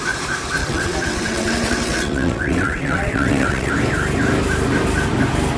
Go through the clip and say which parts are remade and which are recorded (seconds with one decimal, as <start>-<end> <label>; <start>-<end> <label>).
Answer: 0.0-0.6 recorded; 0.6-3.7 remade; 3.7-5.6 recorded